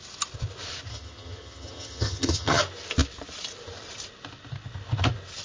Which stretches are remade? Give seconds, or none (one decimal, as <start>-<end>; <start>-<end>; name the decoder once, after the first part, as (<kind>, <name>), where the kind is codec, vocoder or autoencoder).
0.9-2.6 (vocoder, HiFi-GAN)